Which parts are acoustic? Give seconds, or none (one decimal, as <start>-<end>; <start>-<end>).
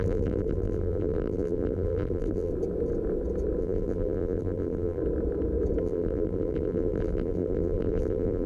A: 2.5-3.6; 5.0-5.8